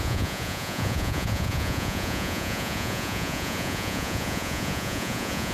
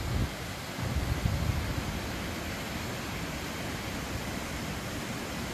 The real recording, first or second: second